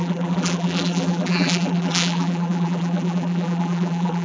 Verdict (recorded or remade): remade